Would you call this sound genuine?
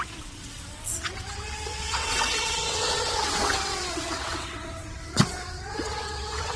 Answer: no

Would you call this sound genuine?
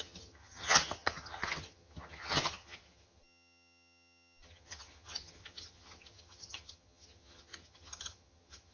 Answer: no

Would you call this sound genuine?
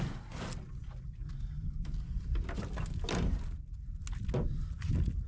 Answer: yes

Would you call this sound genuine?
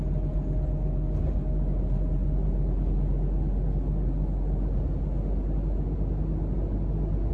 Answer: yes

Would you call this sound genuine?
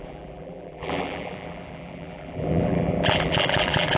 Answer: no